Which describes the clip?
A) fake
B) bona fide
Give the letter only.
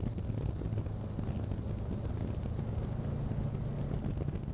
B